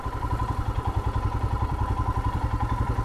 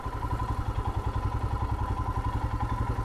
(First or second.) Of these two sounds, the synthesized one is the first